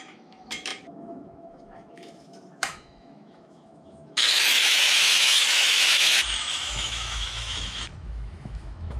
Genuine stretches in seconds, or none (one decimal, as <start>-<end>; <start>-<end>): none